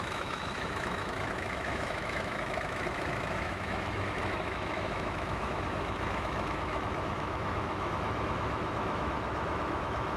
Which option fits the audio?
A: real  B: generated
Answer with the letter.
B